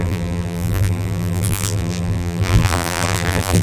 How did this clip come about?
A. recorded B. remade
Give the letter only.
B